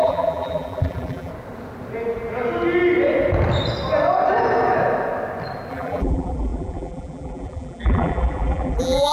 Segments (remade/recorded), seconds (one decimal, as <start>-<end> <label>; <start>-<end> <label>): 0.0-1.3 remade; 1.3-5.7 recorded; 5.7-9.1 remade